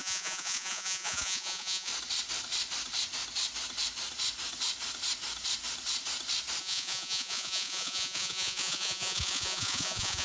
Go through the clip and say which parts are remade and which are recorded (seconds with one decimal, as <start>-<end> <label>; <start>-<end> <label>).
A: 0.0-1.9 remade; 1.9-6.6 recorded; 6.6-10.2 remade